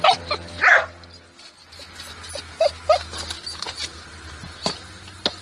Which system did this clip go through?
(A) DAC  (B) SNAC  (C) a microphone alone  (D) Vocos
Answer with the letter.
C